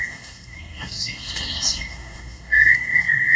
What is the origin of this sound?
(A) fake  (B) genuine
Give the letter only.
A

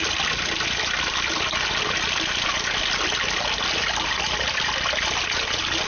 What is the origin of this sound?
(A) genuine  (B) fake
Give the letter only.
A